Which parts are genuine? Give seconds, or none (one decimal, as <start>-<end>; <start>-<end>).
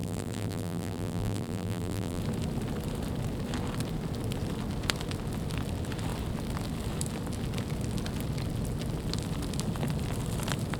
2.2-10.8